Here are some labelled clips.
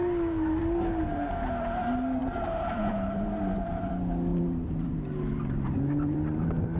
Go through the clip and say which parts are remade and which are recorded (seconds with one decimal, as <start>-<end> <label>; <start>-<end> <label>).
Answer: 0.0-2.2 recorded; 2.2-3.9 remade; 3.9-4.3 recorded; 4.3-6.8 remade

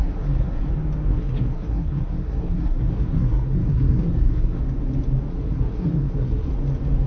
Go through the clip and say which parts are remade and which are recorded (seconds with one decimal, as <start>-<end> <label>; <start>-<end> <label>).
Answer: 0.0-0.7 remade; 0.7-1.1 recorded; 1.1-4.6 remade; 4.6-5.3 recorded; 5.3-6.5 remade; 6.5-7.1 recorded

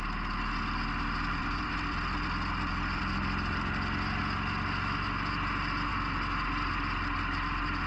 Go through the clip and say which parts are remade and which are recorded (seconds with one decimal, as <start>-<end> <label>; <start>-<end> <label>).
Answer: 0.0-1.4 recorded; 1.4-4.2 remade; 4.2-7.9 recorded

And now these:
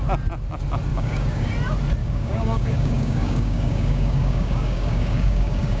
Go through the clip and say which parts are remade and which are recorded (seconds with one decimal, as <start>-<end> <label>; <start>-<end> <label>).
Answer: 0.0-0.9 recorded; 0.9-1.5 remade; 1.5-2.0 recorded; 2.0-5.8 remade

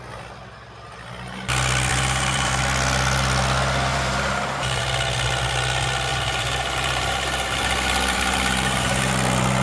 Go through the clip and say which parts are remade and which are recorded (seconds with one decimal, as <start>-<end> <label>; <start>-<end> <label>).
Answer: 0.0-1.9 recorded; 1.9-2.6 remade; 2.6-3.9 recorded; 3.9-4.8 remade; 4.8-6.1 recorded; 6.1-9.1 remade; 9.1-9.6 recorded

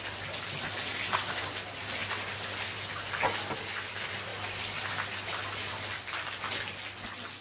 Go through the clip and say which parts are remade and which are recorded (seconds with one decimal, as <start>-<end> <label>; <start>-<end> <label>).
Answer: 0.0-7.4 recorded